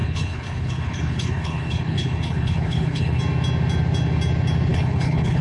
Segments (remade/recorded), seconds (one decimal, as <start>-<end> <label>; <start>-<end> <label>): 0.0-3.2 remade; 3.2-4.7 recorded; 4.7-5.4 remade